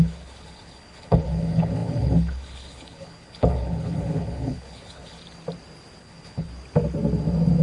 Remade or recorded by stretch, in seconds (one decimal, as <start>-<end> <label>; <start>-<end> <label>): 0.0-5.2 remade; 5.2-6.0 recorded; 6.0-6.5 remade; 6.5-7.6 recorded